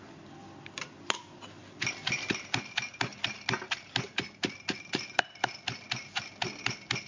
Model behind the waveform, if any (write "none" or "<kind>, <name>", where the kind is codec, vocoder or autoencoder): none